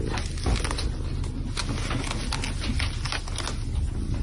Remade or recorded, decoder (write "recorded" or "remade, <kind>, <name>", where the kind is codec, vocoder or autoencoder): recorded